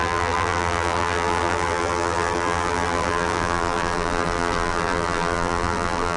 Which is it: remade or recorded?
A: remade